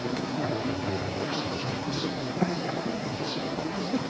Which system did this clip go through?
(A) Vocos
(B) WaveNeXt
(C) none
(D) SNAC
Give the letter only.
D